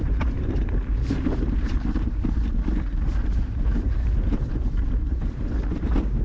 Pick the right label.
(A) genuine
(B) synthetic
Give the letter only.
B